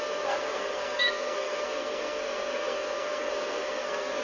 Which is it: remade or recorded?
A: remade